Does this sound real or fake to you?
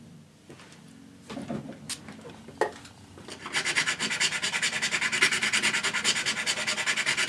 real